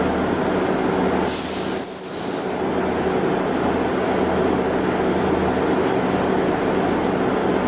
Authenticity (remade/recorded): recorded